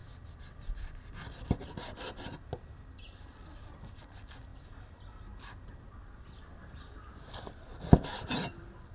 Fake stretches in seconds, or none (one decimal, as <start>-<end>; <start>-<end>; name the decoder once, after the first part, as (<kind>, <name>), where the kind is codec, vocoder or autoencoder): none